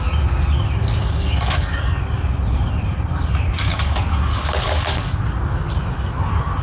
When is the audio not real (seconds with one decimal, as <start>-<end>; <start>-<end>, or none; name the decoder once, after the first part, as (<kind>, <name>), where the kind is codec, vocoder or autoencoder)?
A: 1.0-2.0 (codec, DAC); 3.7-5.2